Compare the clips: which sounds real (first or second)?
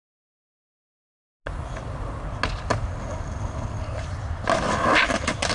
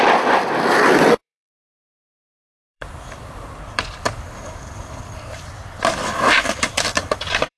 first